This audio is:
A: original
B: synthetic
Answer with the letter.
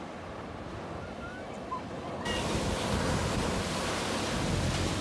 A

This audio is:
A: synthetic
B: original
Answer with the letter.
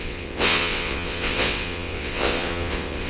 A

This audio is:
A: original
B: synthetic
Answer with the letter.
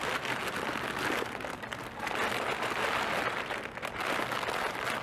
A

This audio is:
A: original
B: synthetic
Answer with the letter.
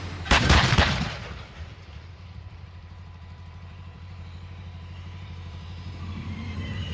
B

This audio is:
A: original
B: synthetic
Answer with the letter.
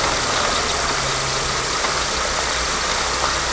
A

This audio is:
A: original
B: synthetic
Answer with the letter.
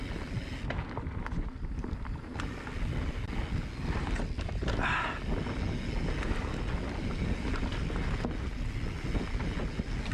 A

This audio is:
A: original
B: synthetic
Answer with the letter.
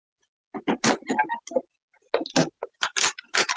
A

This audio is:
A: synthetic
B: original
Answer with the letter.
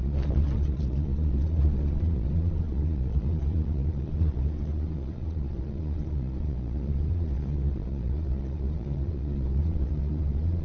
A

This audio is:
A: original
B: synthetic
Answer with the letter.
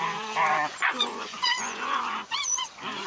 B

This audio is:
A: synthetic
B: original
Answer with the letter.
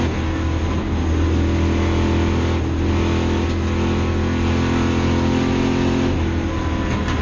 B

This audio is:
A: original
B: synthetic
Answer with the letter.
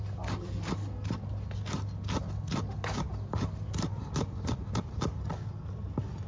A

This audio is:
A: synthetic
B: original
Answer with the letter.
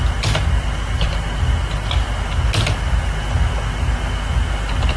B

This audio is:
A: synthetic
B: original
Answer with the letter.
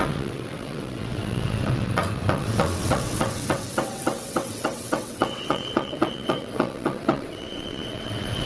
A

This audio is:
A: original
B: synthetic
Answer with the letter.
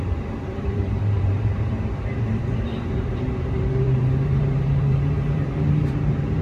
B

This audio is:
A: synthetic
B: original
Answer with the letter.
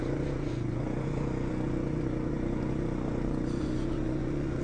A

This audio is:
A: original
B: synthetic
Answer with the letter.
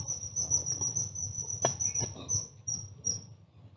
A